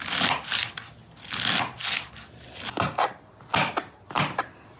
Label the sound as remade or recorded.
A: recorded